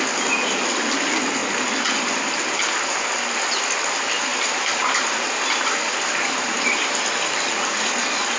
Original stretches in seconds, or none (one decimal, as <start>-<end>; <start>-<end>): 0.0-4.3; 6.9-8.4